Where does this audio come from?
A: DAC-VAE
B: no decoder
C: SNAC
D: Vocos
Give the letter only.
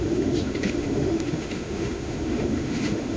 A